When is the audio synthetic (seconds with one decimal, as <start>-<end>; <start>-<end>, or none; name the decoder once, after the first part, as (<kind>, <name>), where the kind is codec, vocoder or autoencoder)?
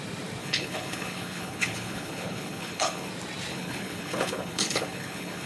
0.4-3.1 (codec, HILCodec); 3.5-5.5